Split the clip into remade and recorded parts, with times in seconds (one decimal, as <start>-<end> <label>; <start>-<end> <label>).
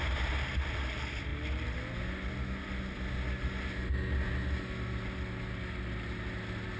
0.0-6.8 recorded